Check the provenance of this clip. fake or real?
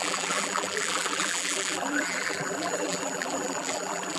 fake